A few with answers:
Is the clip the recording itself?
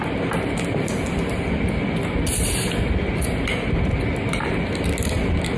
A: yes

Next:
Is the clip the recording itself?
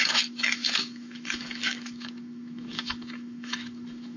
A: no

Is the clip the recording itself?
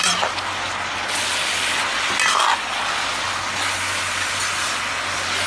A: yes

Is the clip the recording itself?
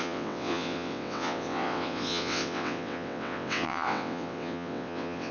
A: no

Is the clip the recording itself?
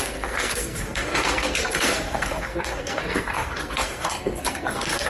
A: no